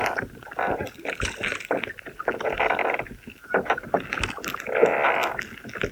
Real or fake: real